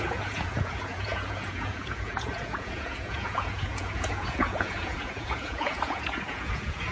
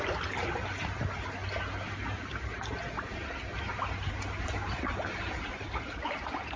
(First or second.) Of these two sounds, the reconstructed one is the first